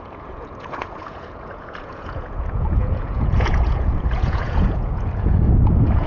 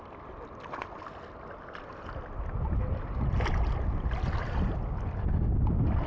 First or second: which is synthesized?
first